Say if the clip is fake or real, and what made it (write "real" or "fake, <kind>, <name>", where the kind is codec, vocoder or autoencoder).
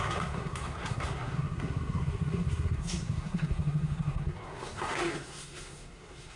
fake, codec, SNAC